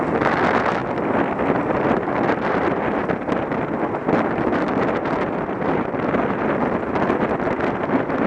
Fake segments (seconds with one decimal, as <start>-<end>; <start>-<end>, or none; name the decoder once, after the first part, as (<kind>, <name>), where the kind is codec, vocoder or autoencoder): none